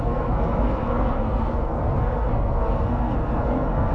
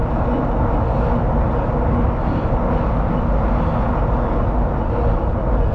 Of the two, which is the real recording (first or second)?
second